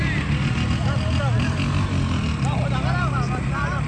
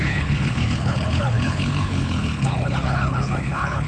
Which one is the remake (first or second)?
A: second